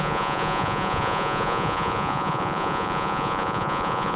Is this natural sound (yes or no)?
no